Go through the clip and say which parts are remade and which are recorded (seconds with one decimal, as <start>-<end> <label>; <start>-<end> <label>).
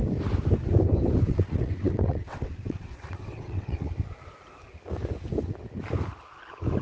0.0-1.3 recorded; 1.3-3.9 remade; 3.9-6.8 recorded